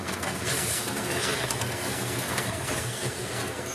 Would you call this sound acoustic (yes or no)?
no